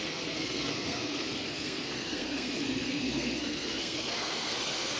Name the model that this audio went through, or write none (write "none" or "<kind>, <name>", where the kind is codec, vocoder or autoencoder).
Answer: codec, SNAC